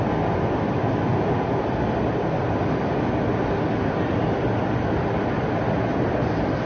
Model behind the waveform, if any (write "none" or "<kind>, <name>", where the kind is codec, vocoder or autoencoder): none